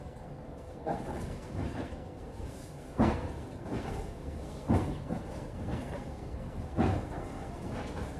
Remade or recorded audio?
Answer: remade